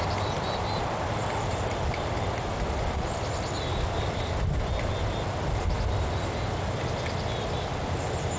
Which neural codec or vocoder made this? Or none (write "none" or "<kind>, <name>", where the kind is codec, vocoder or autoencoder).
none